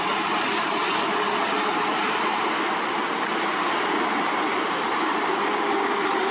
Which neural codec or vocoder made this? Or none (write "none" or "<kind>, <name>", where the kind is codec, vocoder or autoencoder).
none